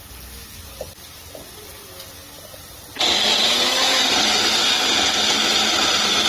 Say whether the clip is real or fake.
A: real